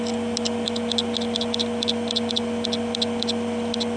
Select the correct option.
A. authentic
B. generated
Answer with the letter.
A